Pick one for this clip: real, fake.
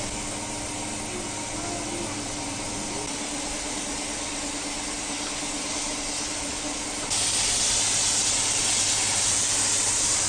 real